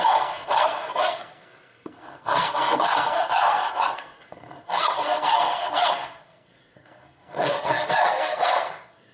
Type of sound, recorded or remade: remade